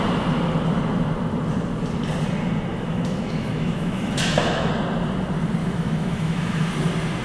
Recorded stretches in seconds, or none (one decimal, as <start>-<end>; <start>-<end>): 0.0-2.7; 4.7-5.6; 6.7-7.2

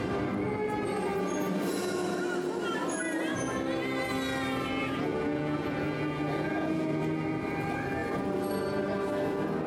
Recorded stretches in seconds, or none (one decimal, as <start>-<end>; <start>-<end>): 0.0-4.8; 7.0-9.7

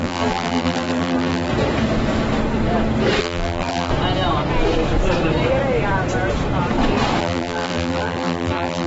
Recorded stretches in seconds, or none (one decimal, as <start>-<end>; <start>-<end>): 1.5-3.2; 3.9-7.2

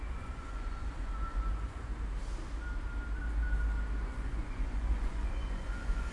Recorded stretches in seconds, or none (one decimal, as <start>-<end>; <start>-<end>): 1.9-4.0

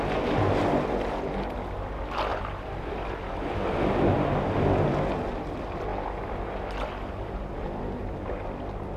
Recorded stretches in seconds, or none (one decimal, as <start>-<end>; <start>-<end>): 0.0-9.0

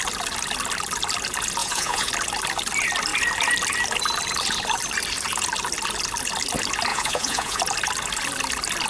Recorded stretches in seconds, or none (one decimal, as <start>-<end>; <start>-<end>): 0.0-1.6; 2.1-6.9; 7.6-8.9

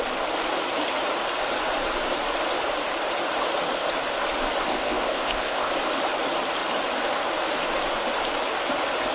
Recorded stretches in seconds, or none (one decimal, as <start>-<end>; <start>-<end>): 0.0-4.7; 5.7-9.1

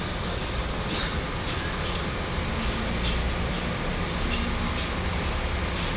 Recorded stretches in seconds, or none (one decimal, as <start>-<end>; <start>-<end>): 0.0-6.0